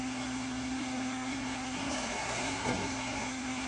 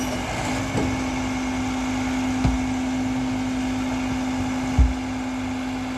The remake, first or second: first